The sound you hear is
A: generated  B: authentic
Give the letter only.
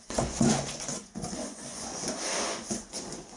A